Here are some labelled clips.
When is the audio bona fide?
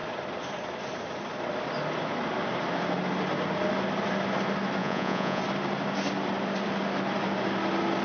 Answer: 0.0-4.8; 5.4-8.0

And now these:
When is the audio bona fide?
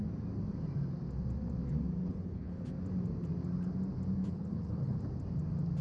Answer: 0.0-2.0; 2.6-4.2; 5.0-5.8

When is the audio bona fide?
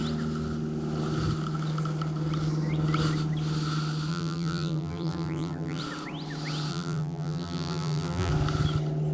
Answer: 0.0-4.1; 5.8-6.7; 8.3-9.1